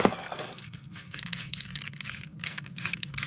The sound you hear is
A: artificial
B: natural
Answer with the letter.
A